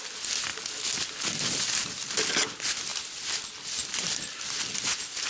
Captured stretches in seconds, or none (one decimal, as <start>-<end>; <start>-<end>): 0.0-5.3

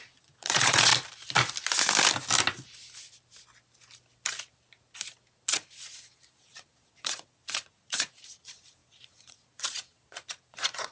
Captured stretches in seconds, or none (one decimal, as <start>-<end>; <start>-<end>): 0.9-5.5

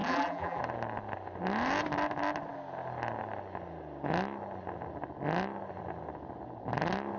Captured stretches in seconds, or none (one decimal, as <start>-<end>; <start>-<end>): 0.6-7.2

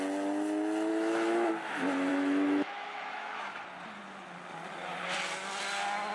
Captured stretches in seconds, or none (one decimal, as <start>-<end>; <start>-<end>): 0.0-0.9; 1.5-2.1; 3.6-6.1